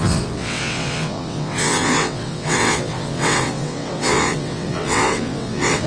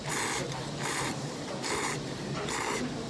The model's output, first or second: first